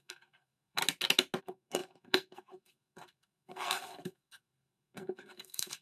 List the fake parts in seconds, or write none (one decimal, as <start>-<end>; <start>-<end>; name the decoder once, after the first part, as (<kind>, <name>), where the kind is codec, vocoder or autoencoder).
0.0-0.8 (codec, SNAC); 1.4-5.8